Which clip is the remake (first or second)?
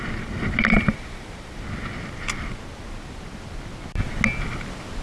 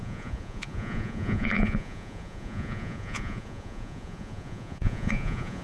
second